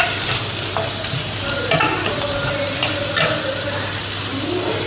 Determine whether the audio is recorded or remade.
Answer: recorded